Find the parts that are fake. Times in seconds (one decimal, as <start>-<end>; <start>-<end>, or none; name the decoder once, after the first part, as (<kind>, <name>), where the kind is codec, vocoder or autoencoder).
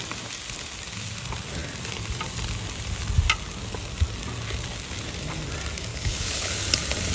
5.9-6.5 (codec, HILCodec)